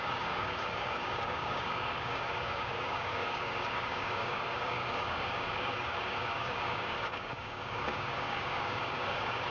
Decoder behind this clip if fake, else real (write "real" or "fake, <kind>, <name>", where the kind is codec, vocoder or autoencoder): fake, codec, DAC